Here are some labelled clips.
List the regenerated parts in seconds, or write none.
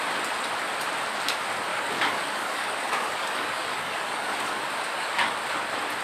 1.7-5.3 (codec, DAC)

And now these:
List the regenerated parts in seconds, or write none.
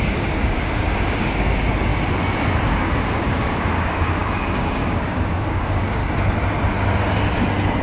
0.0-1.9 (codec, DAC); 2.7-6.0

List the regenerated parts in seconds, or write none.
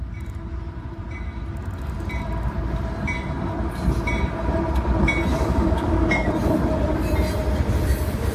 5.3-6.3 (codec, DAC)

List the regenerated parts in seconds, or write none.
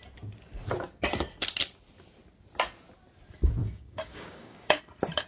3.6-4.8 (codec, DAC)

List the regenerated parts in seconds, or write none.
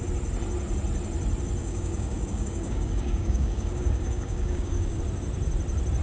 1.6-5.0 (codec, DAC)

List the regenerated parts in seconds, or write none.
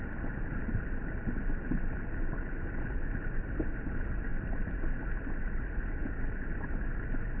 none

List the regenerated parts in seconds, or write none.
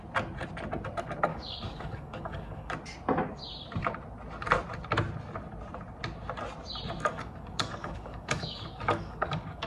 1.3-2.7 (codec, DAC); 7.1-9.7